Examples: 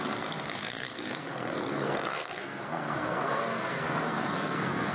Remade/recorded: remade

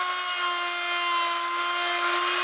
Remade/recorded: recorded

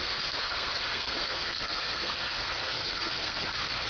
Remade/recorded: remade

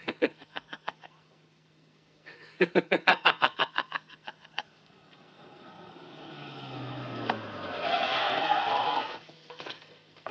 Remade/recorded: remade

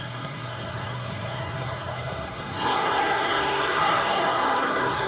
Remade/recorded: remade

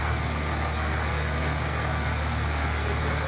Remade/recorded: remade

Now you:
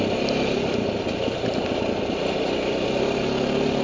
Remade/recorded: recorded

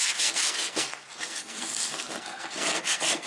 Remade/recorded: remade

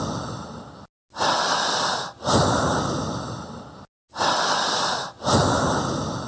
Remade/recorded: recorded